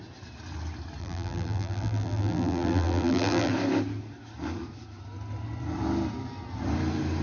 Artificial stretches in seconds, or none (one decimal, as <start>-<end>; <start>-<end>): 1.0-3.5